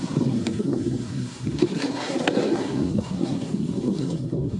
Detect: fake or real fake